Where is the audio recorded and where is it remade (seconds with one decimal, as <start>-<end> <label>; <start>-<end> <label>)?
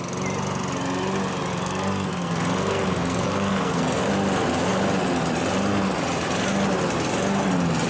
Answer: 0.0-1.5 recorded; 1.5-4.1 remade; 4.1-7.9 recorded